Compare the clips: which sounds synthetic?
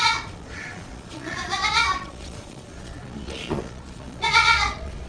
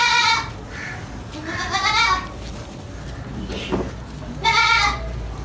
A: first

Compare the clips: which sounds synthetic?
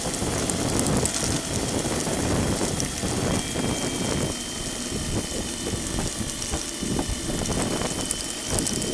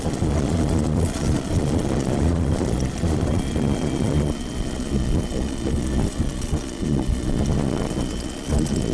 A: second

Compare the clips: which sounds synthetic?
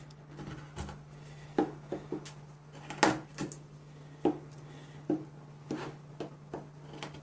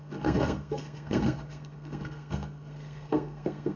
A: second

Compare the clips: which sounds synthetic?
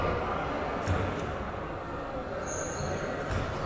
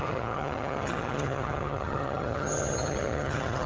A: second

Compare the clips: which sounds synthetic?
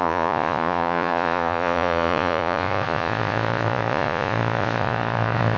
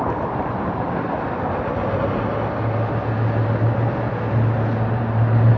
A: first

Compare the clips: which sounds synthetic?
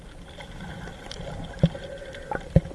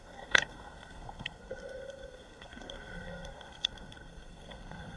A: second